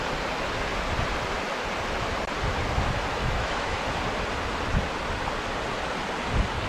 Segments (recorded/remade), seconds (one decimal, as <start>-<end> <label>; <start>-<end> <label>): 0.0-3.2 recorded; 3.2-3.8 remade; 3.8-6.7 recorded